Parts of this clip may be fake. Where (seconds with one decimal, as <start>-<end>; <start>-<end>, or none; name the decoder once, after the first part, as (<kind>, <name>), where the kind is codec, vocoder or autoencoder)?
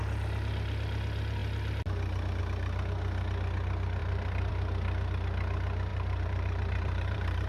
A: 4.0-4.5 (vocoder, BigVGAN v2); 5.9-7.5